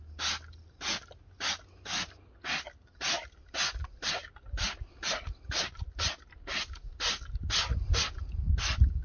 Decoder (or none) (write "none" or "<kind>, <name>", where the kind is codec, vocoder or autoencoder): none